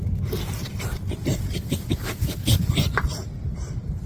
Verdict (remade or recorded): remade